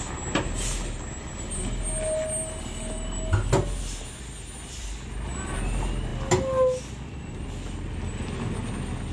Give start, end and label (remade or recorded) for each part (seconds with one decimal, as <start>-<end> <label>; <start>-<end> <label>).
0.0-9.1 recorded

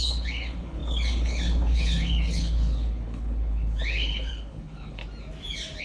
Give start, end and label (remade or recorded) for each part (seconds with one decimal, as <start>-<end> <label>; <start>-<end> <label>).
0.0-5.0 remade; 5.0-5.8 recorded